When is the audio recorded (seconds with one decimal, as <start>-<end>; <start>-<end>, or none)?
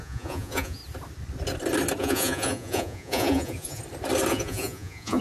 0.8-2.0; 3.8-4.3